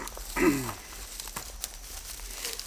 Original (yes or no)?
yes